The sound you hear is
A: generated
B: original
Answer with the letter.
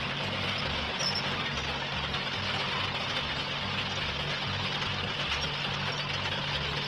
B